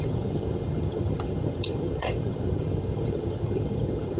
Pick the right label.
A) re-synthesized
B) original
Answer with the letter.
A